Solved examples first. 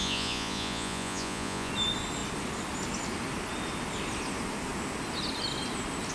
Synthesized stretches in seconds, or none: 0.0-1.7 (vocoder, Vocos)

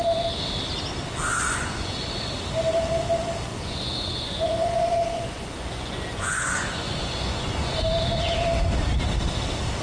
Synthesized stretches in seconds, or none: 1.3-2.3 (vocoder, Vocos); 3.5-7.8